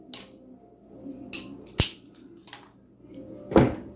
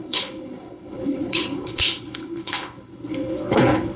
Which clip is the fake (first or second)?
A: second